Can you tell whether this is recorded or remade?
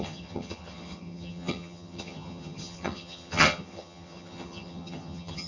remade